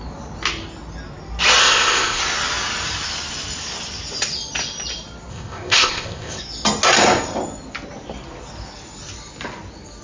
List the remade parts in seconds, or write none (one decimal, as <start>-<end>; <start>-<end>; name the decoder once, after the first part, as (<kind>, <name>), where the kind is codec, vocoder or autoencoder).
1.6-2.2 (codec, ZipCodec); 5.3-6.4